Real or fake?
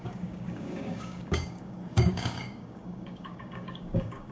fake